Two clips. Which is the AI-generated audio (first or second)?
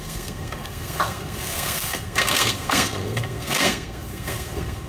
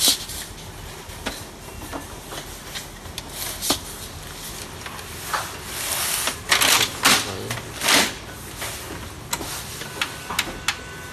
first